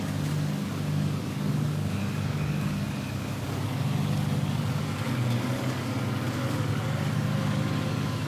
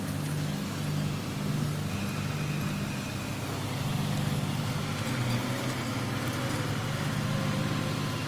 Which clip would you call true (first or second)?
second